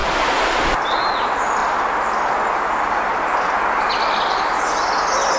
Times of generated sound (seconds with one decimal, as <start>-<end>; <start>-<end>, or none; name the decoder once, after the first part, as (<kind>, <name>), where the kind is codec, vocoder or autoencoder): 0.0-1.1 (vocoder, BigVGAN v2)